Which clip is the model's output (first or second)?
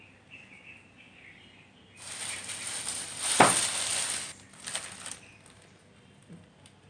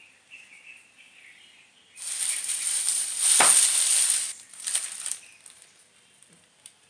second